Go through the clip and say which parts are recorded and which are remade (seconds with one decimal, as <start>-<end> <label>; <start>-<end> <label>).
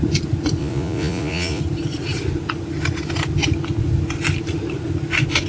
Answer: 0.0-0.6 recorded; 0.6-1.6 remade; 1.6-5.5 recorded